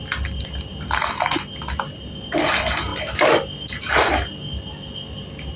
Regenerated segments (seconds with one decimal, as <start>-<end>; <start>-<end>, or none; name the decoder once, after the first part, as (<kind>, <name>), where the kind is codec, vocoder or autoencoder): none